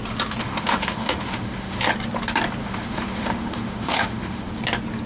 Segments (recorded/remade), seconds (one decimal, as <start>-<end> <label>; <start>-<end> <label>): 0.0-0.4 recorded; 0.4-1.8 remade; 1.8-2.6 recorded; 2.6-4.5 remade; 4.5-5.1 recorded